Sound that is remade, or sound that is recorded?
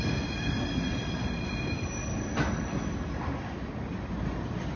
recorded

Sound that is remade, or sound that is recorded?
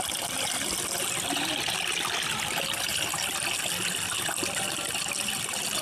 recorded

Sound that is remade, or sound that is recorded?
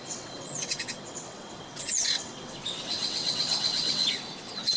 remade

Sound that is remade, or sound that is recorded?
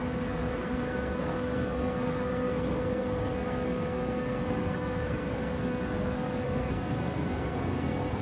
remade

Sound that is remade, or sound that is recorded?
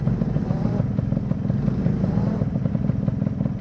recorded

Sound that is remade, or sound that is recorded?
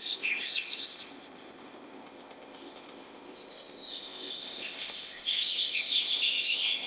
remade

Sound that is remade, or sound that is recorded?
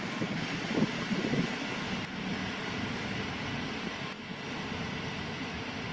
recorded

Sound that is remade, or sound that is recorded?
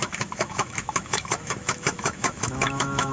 remade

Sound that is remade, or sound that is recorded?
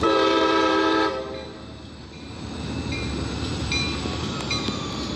remade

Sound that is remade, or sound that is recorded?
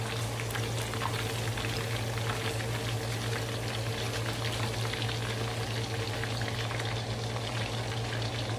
recorded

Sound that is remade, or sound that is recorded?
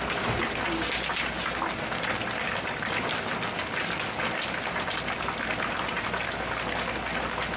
recorded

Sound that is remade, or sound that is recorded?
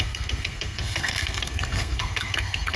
remade